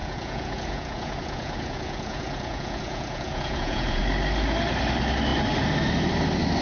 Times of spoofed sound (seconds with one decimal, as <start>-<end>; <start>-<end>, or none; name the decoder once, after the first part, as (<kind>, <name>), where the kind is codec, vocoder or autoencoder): 0.0-4.0 (vocoder, Vocos)